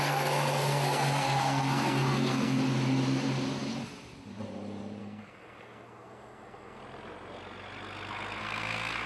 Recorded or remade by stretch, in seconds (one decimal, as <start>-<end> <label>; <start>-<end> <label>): 0.0-2.6 remade; 2.6-5.0 recorded; 5.0-6.8 remade; 6.8-8.4 recorded; 8.4-9.1 remade